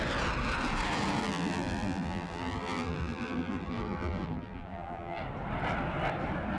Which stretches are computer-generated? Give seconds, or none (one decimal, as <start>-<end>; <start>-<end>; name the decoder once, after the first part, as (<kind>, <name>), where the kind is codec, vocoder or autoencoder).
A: 1.2-5.2 (vocoder, BigVGAN v2)